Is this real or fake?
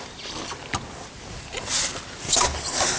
real